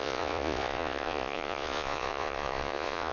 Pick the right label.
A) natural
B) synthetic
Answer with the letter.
B